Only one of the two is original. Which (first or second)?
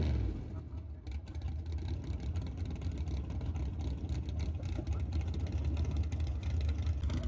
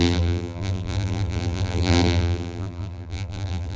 first